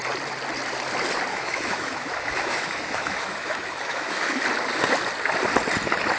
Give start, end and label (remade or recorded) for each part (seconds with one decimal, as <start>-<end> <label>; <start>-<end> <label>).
0.0-1.3 recorded; 1.3-4.4 remade; 4.4-6.2 recorded